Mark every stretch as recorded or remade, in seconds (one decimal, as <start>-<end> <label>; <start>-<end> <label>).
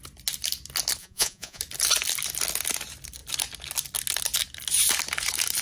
0.0-1.0 recorded; 1.0-1.6 remade; 1.6-5.6 recorded